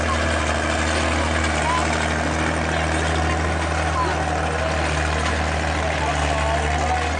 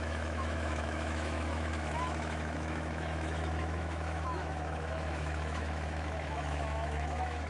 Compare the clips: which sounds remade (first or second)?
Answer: second